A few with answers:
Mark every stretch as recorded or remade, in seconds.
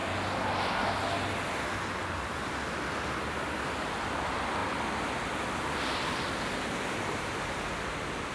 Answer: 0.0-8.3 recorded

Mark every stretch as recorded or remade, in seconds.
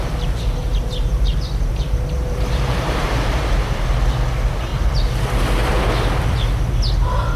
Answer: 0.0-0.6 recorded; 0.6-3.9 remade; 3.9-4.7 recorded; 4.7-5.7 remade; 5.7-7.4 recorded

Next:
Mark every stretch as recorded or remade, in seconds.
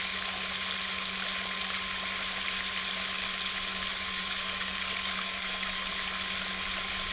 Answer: 0.0-3.7 recorded; 3.7-5.9 remade; 5.9-7.1 recorded